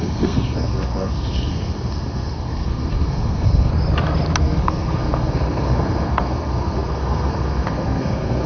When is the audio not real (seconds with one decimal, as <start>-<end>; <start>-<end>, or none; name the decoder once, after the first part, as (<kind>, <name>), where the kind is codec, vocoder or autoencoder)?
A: 0.0-3.7 (codec, SNAC); 4.4-8.5